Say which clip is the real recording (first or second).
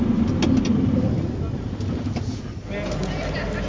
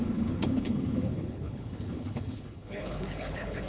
first